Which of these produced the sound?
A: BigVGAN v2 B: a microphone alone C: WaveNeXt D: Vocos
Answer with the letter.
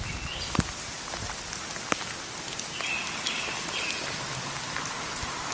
B